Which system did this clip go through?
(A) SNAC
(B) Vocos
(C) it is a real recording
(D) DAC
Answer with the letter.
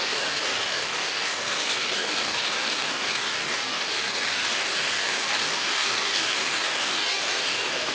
D